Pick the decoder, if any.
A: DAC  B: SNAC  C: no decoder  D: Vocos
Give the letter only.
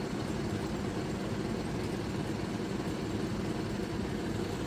C